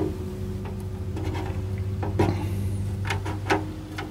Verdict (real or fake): real